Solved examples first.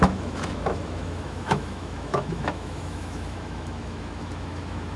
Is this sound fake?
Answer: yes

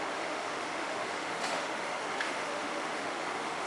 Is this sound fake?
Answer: yes